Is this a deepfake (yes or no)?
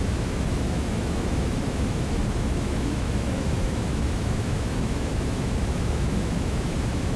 yes